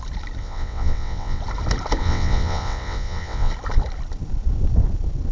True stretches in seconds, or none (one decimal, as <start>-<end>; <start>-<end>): 0.0-0.4; 1.4-2.0; 3.5-5.3